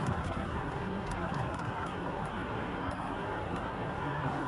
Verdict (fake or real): fake